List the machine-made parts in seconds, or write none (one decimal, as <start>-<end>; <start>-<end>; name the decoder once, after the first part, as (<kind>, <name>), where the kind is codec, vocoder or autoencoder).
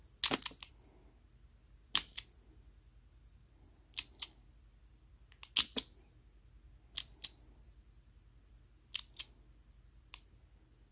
none